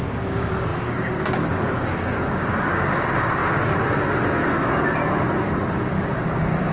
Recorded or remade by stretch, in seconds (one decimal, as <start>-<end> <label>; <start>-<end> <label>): 0.0-5.0 remade; 5.0-5.7 recorded; 5.7-6.7 remade